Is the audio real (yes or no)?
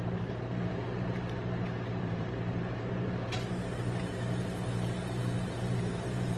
no